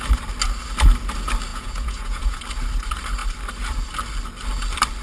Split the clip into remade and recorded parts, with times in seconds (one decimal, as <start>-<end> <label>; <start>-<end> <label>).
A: 0.0-1.5 recorded; 1.5-2.4 remade; 2.4-5.0 recorded